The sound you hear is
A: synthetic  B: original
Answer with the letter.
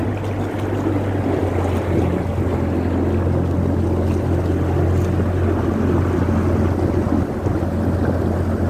B